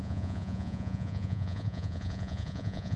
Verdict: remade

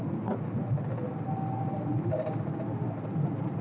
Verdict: recorded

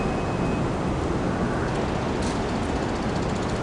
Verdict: recorded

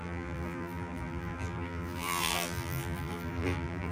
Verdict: remade